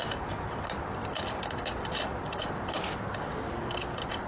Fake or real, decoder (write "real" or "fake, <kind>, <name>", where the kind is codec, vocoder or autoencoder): real